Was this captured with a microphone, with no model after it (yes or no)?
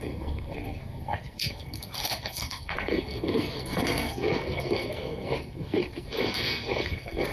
no